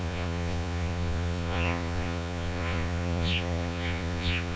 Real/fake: fake